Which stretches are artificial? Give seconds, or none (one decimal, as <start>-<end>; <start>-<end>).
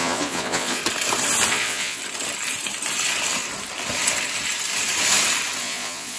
0.0-0.8; 1.5-2.0; 5.6-6.2